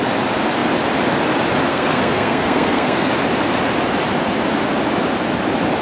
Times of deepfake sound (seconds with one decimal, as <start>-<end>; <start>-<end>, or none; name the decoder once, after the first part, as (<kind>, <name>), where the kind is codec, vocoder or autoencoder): 1.7-3.1 (codec, SNAC)